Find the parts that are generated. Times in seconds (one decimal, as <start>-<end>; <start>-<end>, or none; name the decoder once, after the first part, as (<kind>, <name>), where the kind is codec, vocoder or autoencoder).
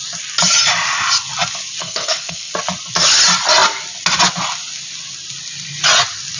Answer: 1.8-2.5 (codec, SNAC)